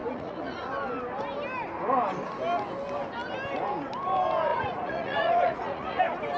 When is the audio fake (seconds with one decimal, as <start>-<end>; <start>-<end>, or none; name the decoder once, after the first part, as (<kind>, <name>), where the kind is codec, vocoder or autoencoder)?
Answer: 0.0-0.7 (vocoder, Vocos); 4.5-6.0